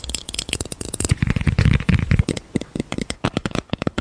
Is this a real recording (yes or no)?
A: no